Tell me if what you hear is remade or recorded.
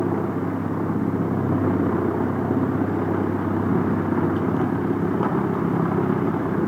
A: recorded